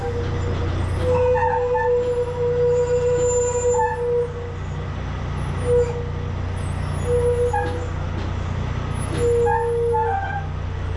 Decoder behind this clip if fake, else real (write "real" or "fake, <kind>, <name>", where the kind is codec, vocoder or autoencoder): real